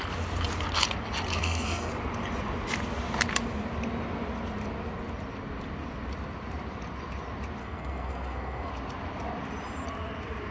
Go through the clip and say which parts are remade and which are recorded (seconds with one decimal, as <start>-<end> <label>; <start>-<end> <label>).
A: 0.0-1.4 recorded; 1.4-1.9 remade; 1.9-7.6 recorded; 7.6-8.7 remade; 8.7-10.5 recorded